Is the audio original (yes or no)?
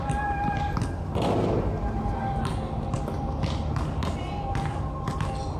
yes